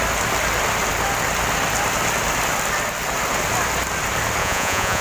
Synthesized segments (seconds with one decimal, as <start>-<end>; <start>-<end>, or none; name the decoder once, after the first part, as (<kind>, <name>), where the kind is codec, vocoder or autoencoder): 4.4-5.0 (vocoder, Vocos)